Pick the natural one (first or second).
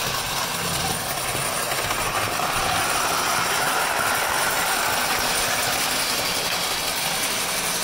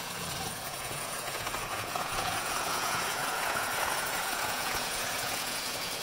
first